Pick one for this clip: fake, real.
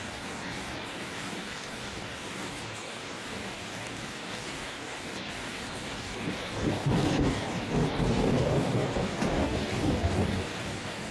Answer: fake